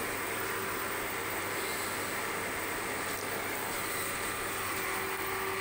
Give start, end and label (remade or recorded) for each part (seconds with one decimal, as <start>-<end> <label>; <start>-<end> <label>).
0.0-5.6 recorded